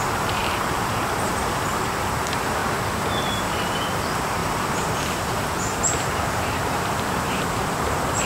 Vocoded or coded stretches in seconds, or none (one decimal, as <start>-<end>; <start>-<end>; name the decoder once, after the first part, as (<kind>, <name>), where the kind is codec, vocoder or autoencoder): 0.0-0.4 (vocoder, BigVGAN v2); 1.1-2.6; 3.4-8.2